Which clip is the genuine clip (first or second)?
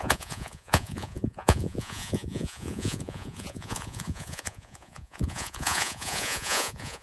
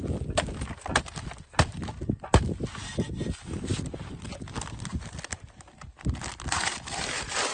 second